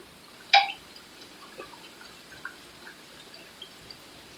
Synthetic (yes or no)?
yes